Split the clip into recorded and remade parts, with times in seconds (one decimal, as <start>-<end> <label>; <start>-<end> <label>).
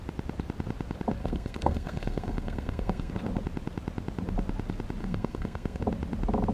0.0-1.2 recorded; 1.2-3.1 remade; 3.1-5.0 recorded; 5.0-5.8 remade; 5.8-6.5 recorded